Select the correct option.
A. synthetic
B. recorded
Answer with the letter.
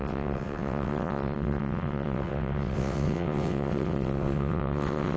A